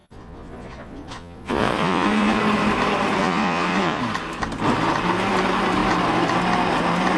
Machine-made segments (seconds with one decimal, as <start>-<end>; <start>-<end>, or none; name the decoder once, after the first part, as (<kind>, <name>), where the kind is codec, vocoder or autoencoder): 0.0-2.4 (vocoder, Vocos); 3.2-4.0